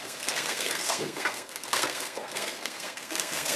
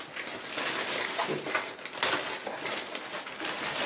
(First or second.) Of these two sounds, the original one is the second